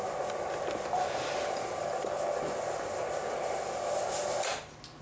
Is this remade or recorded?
recorded